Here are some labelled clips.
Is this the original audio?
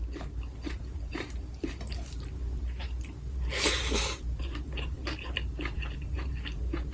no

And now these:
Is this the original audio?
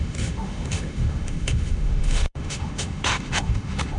no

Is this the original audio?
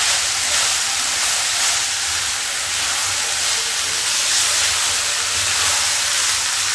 yes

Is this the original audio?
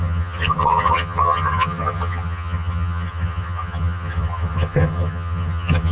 no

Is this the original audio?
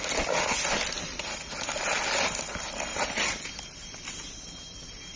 yes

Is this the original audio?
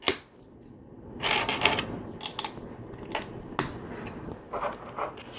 yes